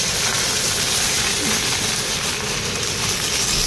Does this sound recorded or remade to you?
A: recorded